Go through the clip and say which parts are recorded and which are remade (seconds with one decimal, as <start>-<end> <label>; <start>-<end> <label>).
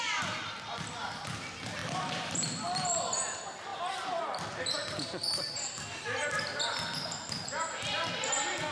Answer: 0.0-8.7 recorded